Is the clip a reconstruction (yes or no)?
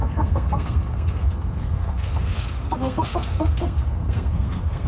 yes